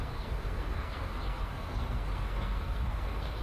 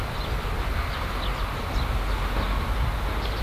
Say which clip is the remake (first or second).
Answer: first